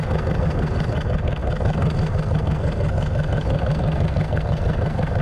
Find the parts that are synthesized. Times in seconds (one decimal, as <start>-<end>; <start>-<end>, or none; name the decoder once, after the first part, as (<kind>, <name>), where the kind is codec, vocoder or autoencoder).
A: 0.0-5.2 (codec, SNAC)